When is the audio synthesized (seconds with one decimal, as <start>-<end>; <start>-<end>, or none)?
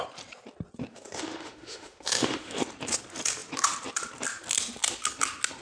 0.9-2.6